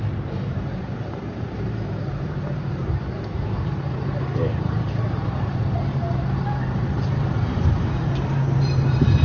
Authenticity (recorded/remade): remade